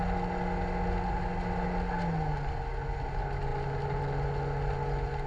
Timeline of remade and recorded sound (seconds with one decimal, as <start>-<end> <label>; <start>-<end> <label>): 0.0-5.3 recorded